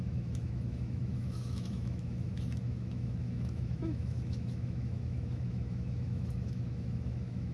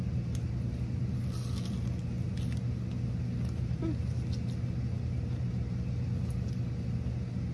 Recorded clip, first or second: second